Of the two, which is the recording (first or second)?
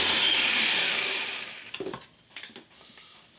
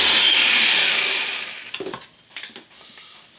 second